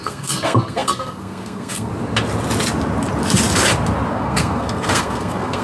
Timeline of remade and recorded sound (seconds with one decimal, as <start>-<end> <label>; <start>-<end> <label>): 0.0-1.9 remade; 1.9-4.1 recorded; 4.1-5.6 remade